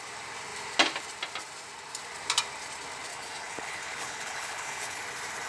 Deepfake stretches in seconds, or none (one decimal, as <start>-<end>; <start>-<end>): 3.1-5.0